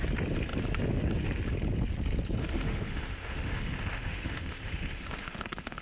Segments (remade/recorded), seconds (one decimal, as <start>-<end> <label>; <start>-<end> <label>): 0.0-2.4 recorded; 2.4-5.8 remade

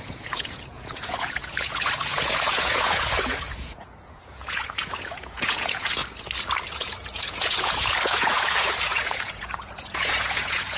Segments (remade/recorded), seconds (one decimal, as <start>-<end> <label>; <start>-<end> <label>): 0.0-6.0 remade; 6.0-6.7 recorded; 6.7-10.8 remade

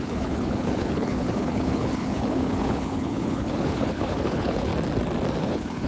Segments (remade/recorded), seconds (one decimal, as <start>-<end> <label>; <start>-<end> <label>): 0.0-4.7 remade; 4.7-5.4 recorded; 5.4-5.9 remade

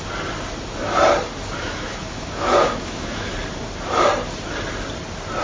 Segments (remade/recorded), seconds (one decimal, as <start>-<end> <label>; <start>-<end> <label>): 0.0-1.6 recorded; 1.6-3.3 remade; 3.3-5.4 recorded

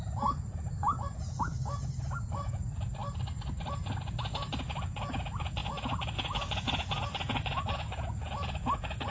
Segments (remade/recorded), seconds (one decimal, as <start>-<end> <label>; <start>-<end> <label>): 0.0-1.5 remade; 1.5-2.2 recorded; 2.2-3.0 remade; 3.0-3.7 recorded; 3.7-9.1 remade

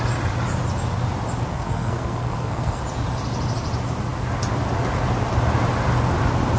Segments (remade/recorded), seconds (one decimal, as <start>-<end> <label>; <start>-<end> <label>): 0.0-1.5 recorded; 1.5-2.8 remade; 2.8-6.6 recorded

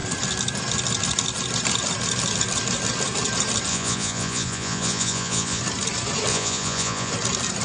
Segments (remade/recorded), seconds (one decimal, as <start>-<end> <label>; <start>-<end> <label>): 0.0-3.7 recorded; 3.7-5.6 remade; 5.6-6.3 recorded; 6.3-7.1 remade; 7.1-7.6 recorded